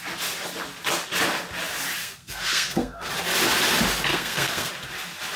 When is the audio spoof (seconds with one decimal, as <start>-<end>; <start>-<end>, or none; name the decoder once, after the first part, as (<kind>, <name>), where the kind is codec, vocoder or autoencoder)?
2.0-3.1 (codec, SNAC); 4.1-4.7